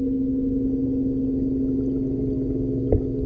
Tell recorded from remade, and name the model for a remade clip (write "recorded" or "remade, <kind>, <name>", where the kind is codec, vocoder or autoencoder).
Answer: recorded